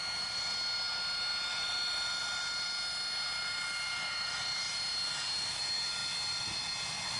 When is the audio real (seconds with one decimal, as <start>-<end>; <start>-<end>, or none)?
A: 0.0-7.2